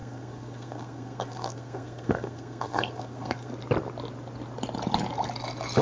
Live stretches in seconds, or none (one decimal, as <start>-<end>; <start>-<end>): 3.5-5.8